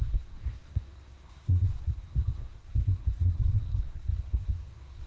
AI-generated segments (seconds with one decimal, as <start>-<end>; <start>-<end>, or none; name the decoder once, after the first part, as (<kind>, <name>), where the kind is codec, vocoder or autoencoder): 0.0-5.1 (codec, SNAC)